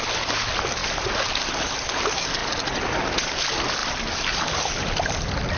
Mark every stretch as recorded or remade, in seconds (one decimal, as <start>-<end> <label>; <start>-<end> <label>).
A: 0.0-5.6 recorded